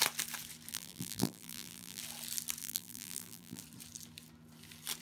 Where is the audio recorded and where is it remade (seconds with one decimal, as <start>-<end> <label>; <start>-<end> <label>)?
0.0-0.7 recorded; 0.7-2.0 remade; 2.0-2.6 recorded; 2.6-3.6 remade; 3.6-5.0 recorded